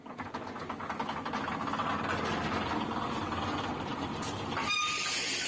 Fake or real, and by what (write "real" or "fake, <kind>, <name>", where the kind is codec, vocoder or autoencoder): real